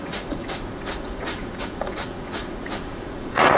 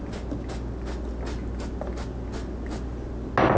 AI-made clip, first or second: first